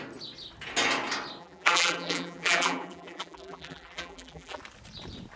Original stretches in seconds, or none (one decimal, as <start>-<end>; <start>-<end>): 0.0-1.4; 4.6-5.4